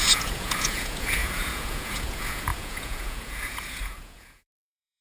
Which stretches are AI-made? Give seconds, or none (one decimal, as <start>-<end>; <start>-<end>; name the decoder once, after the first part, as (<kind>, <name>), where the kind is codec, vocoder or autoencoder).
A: 0.0-5.0 (vocoder, Vocos)